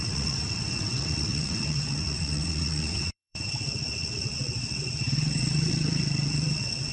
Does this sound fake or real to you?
fake